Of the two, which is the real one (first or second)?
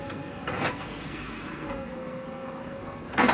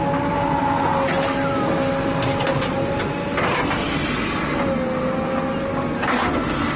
second